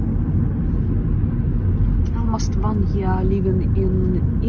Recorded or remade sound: recorded